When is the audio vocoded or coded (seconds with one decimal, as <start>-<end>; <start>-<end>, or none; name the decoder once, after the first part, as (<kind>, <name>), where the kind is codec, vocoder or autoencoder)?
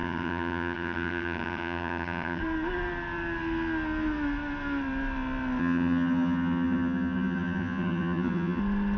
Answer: 0.0-2.4 (vocoder, HiFi-GAN); 5.6-8.6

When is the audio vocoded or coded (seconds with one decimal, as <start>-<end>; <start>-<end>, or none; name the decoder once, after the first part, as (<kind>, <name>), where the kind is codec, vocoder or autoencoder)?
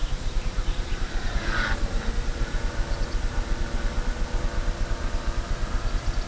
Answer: 0.0-2.1 (vocoder, BigVGAN v2)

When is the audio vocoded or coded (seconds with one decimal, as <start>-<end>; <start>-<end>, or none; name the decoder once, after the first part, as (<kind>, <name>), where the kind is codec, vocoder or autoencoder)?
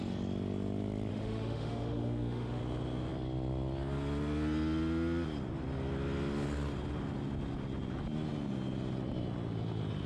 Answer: 1.1-2.6 (autoencoder, DAC-VAE)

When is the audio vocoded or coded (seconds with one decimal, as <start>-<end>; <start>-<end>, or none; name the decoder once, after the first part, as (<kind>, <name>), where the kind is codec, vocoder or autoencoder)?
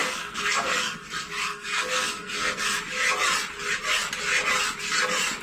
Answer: 0.0-2.8 (codec, SNAC)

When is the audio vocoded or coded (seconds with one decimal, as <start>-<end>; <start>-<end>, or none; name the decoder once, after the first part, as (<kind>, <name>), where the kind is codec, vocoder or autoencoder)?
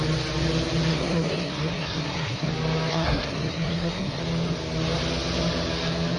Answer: 0.9-2.5 (codec, SNAC); 2.9-4.2